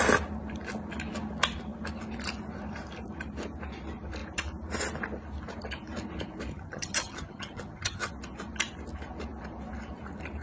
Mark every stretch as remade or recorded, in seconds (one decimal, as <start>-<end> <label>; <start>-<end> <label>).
0.0-6.5 recorded; 6.5-8.1 remade; 8.1-10.4 recorded